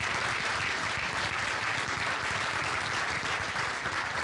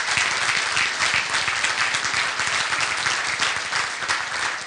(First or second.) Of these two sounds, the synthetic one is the first